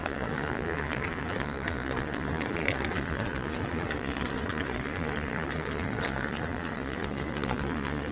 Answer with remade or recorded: remade